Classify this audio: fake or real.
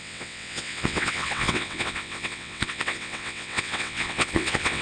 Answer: fake